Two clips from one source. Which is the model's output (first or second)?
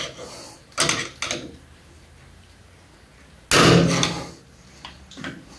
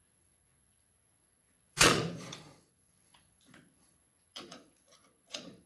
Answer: second